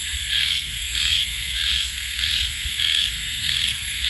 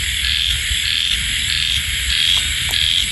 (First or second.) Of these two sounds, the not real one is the first